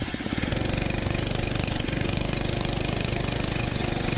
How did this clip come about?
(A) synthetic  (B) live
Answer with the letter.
A